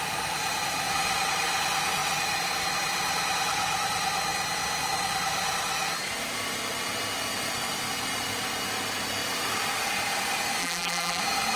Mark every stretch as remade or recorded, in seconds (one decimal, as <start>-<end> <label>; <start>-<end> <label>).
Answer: 0.0-10.6 recorded; 10.6-11.2 remade; 11.2-11.6 recorded